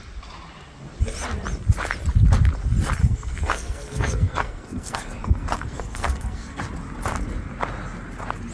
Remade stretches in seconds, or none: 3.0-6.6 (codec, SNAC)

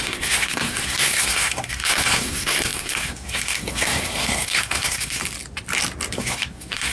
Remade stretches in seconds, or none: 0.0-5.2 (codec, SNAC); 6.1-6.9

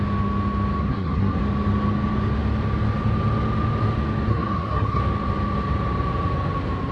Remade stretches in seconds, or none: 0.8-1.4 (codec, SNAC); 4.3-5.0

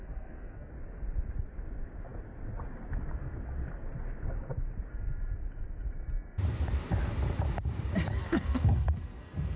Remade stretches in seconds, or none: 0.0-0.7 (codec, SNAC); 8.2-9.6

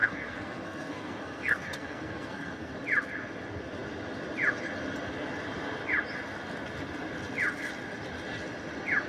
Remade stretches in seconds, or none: 0.0-2.7 (codec, SNAC)

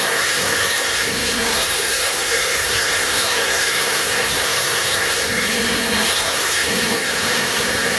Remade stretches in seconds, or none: 0.0-8.0 (codec, SNAC)

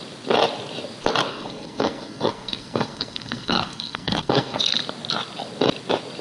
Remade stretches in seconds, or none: 1.3-4.6 (codec, SNAC)

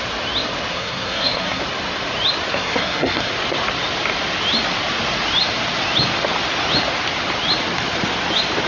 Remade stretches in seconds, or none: 0.7-1.6 (codec, SNAC); 2.5-3.3